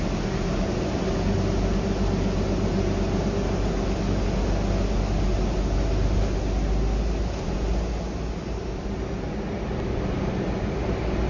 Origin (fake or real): real